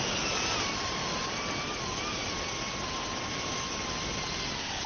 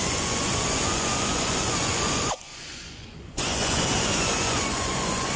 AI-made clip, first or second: second